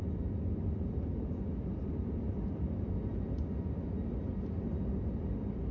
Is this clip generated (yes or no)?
no